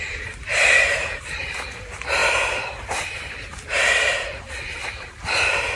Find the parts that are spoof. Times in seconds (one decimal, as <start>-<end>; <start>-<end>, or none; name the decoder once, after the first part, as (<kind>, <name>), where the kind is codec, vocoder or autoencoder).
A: 0.0-5.8 (vocoder, BigVGAN v2)